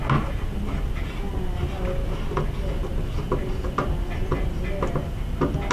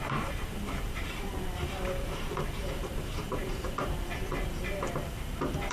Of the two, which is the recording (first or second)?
first